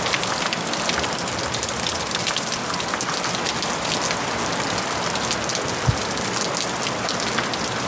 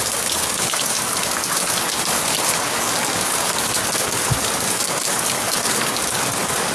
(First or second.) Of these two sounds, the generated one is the second